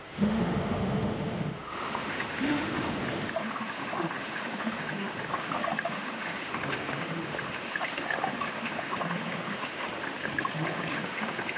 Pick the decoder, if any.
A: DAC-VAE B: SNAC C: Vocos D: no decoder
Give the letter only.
A